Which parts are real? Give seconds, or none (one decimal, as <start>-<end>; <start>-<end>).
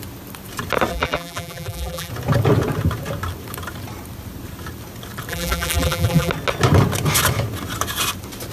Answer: 0.0-0.9; 2.1-5.3; 6.3-8.5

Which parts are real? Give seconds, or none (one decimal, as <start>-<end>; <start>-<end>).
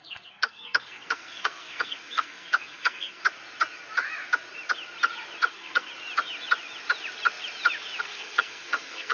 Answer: 3.2-5.5; 5.9-8.0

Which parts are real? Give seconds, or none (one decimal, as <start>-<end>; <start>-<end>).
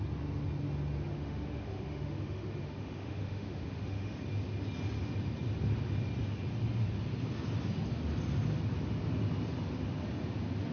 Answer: 0.0-1.1; 4.2-10.7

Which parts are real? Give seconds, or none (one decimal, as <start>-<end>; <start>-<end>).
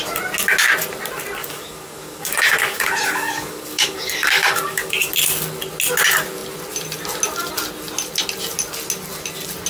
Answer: 0.0-1.4; 5.1-9.7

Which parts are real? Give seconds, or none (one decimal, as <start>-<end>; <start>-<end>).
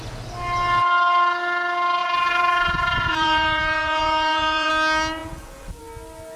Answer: 0.0-2.0; 4.7-5.2; 5.8-6.4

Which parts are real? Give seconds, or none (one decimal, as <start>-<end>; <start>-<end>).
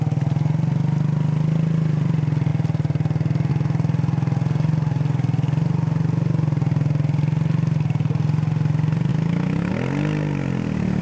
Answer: 0.0-9.1; 9.7-11.0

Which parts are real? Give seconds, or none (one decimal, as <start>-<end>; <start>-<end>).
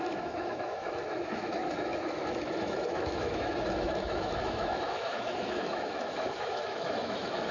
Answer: none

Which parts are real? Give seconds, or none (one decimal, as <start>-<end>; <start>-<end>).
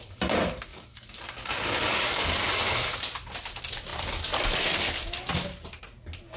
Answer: 0.0-0.7; 2.5-6.4